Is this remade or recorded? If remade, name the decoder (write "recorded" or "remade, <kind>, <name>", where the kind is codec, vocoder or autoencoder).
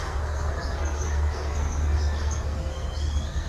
remade, codec, SNAC